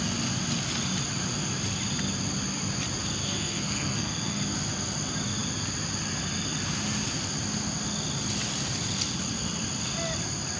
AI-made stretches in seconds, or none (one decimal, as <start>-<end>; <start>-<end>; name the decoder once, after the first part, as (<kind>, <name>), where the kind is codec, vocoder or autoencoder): 3.2-4.4 (codec, SNAC)